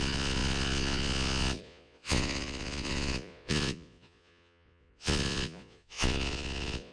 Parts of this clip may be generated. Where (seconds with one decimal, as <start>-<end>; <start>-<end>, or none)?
0.0-6.9